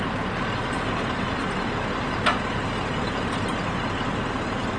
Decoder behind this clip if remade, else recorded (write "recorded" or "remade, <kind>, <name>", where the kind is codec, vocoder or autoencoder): recorded